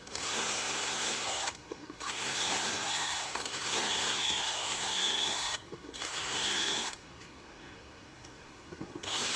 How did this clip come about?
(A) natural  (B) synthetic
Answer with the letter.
B